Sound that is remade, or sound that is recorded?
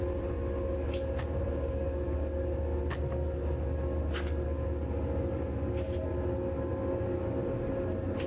recorded